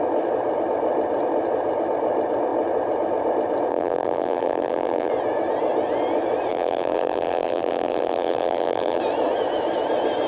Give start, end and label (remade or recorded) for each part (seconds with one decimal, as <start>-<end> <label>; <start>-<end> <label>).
0.0-3.7 recorded; 3.7-5.1 remade; 5.1-6.5 recorded; 6.5-9.0 remade; 9.0-10.3 recorded